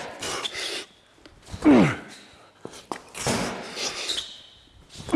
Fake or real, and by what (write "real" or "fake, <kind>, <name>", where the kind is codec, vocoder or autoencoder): real